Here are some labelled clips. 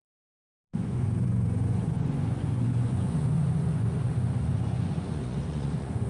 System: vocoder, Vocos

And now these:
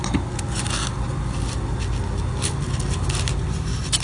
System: none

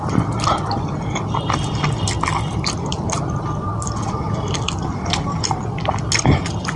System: none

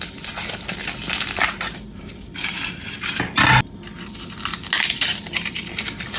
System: none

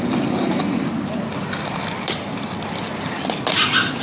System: none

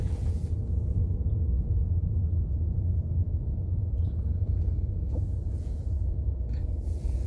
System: vocoder, Vocos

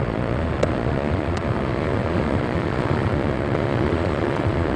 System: vocoder, Vocos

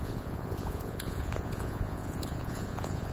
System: vocoder, Vocos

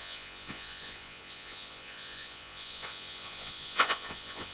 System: vocoder, Vocos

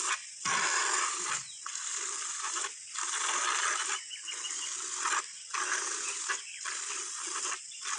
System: none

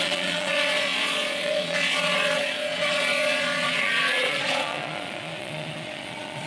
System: vocoder, Vocos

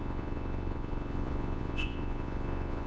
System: vocoder, Vocos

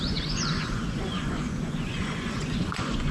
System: vocoder, Vocos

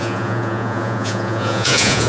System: vocoder, Vocos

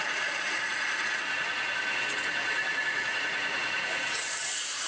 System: vocoder, Vocos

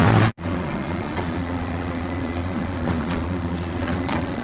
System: vocoder, Vocos